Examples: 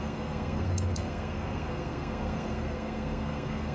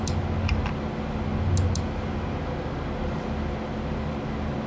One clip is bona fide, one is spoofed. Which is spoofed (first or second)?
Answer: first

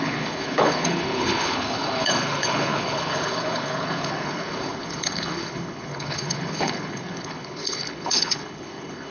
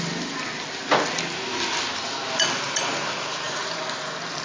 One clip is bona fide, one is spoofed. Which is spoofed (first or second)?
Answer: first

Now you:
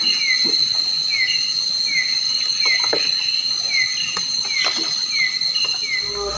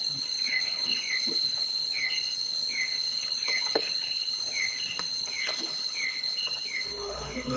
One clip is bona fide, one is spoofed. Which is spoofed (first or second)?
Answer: second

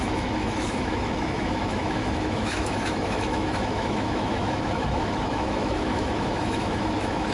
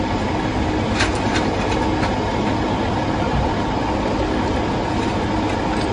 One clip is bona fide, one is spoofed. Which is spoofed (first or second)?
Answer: first